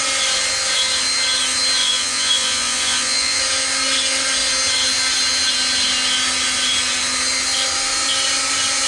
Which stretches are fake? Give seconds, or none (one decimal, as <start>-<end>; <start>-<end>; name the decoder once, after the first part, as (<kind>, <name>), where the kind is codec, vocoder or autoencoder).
1.8-3.4 (vocoder, Vocos)